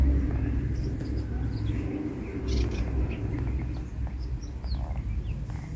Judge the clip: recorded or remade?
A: recorded